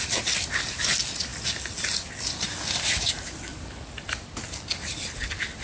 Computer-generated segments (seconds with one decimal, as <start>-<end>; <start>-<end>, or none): none